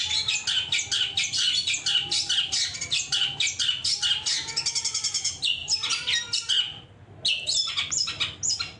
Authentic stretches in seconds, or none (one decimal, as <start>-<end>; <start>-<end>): 0.0-8.8